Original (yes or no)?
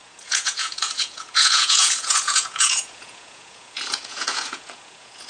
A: no